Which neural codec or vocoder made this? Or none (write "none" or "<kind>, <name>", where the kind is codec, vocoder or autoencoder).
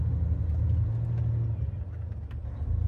none